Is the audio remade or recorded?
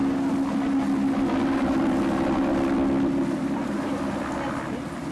recorded